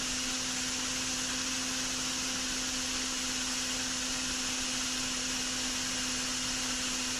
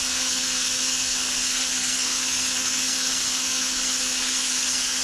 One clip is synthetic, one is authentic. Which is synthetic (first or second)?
second